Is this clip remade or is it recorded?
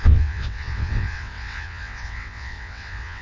remade